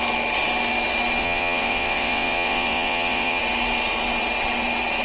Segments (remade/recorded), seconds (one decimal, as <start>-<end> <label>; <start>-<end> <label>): 0.0-1.2 recorded; 1.2-3.4 remade; 3.4-5.0 recorded